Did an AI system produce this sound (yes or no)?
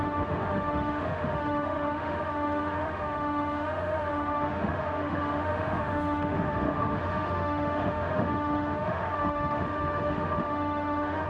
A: yes